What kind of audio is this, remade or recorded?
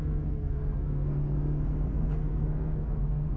remade